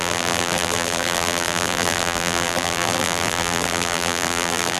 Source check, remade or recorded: remade